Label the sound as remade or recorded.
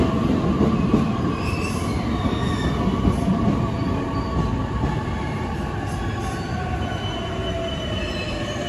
recorded